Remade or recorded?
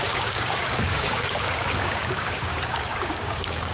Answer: remade